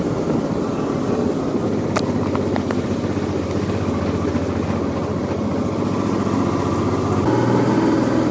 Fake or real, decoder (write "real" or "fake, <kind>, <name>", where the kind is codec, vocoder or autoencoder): real